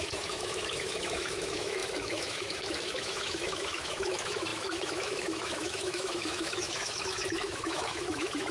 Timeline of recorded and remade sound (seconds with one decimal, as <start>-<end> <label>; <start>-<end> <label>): 0.0-8.5 remade